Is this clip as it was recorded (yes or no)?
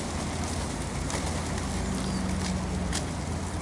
yes